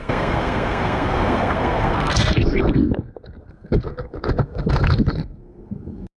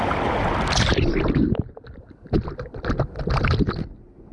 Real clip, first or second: second